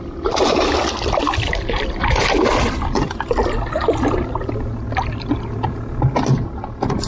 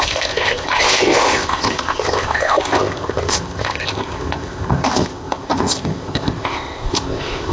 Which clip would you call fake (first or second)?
second